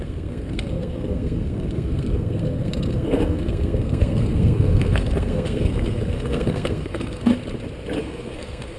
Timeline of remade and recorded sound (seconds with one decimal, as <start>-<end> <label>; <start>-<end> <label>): 0.0-7.3 remade; 7.3-8.0 recorded; 8.0-8.8 remade